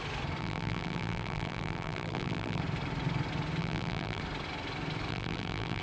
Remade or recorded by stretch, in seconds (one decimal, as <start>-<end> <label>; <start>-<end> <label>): 0.0-0.4 recorded; 0.4-2.6 remade; 2.6-3.6 recorded; 3.6-4.2 remade; 4.2-5.1 recorded; 5.1-5.8 remade